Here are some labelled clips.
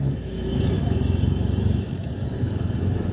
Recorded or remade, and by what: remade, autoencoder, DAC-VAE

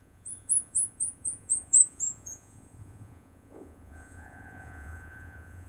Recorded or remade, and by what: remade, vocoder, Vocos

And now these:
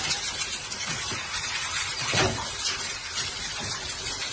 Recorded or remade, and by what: recorded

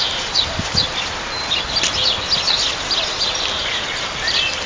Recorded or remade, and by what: recorded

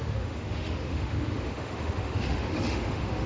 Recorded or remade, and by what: remade, autoencoder, DAC-VAE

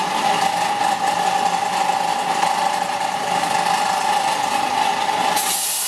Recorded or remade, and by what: recorded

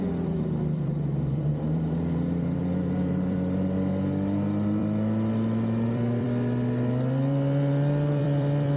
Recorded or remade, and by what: remade, vocoder, BigVGAN v2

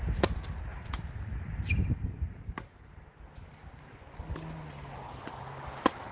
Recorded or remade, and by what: recorded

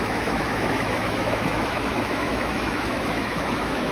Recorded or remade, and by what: remade, autoencoder, DAC-VAE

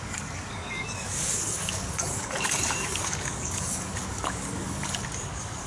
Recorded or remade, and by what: remade, codec, DAC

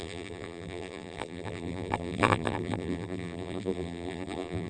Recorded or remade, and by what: remade, vocoder, BigVGAN v2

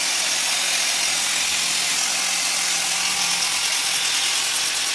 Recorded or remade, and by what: recorded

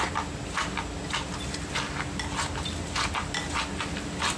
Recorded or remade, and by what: recorded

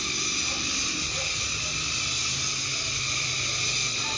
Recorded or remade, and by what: recorded